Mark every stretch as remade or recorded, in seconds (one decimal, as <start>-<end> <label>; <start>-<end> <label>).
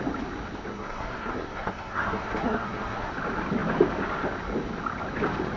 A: 0.0-0.7 recorded; 0.7-3.1 remade; 3.1-5.6 recorded